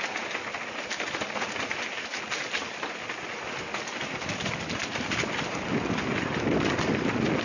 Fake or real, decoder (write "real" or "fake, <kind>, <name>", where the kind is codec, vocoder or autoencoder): real